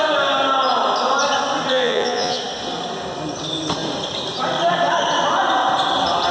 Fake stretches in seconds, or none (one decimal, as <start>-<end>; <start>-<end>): 1.7-2.4